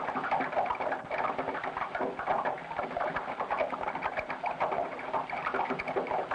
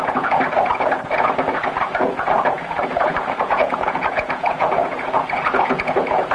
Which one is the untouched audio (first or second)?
first